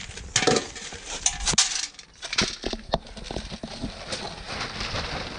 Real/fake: real